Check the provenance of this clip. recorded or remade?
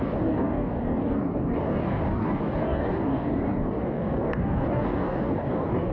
remade